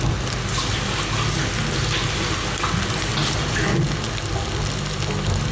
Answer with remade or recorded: recorded